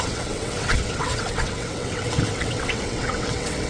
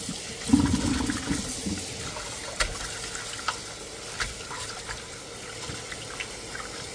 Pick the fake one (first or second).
first